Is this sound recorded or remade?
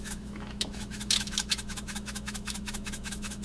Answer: remade